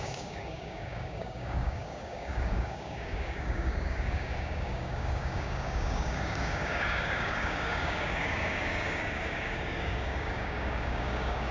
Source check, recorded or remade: remade